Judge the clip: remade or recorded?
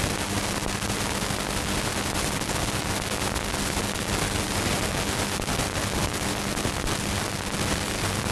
recorded